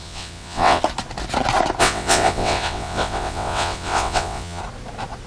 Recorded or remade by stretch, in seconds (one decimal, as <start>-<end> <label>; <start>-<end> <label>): 0.0-0.8 remade; 0.8-1.8 recorded; 1.8-4.6 remade; 4.6-5.3 recorded